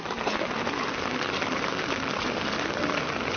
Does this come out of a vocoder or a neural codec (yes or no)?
no